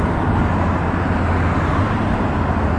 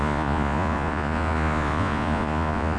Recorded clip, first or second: first